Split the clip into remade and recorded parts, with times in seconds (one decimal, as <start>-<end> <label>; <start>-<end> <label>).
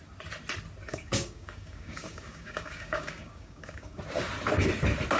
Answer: 0.0-0.9 recorded; 0.9-4.0 remade; 4.0-5.2 recorded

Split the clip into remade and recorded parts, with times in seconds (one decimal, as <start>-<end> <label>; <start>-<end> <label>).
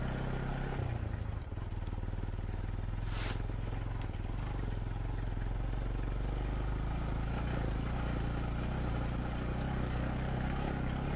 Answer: 0.0-9.5 recorded; 9.5-11.2 remade